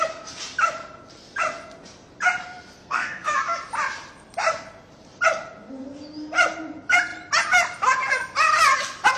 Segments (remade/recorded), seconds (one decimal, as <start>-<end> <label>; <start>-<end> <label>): 0.0-2.8 recorded; 2.8-3.4 remade; 3.4-9.2 recorded

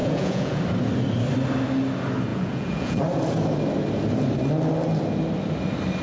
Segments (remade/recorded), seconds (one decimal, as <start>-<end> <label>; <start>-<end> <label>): 0.0-0.6 remade; 0.6-2.3 recorded; 2.3-3.0 remade; 3.0-6.0 recorded

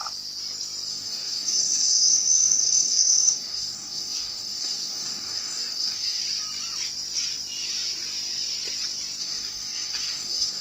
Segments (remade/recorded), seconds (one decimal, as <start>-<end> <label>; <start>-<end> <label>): 0.0-0.9 recorded; 0.9-6.2 remade; 6.2-9.2 recorded; 9.2-10.6 remade